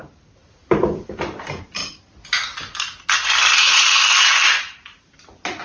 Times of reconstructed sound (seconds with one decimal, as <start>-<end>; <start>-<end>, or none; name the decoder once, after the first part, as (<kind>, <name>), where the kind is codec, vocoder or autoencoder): 0.0-1.8 (vocoder, BigVGAN v2)